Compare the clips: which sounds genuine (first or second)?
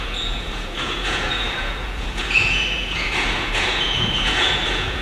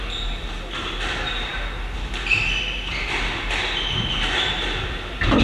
second